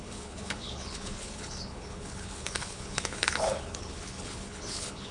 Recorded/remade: remade